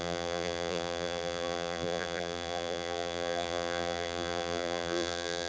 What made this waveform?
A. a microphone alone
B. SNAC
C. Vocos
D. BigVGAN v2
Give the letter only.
D